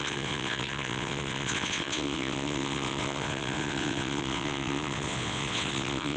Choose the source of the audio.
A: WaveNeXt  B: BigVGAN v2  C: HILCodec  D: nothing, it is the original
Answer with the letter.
A